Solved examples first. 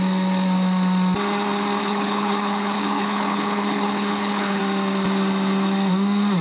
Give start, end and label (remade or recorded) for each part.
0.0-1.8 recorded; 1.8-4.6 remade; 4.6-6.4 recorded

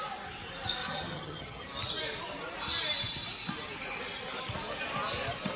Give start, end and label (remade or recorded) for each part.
0.0-0.8 recorded; 0.8-1.7 remade; 1.7-5.6 recorded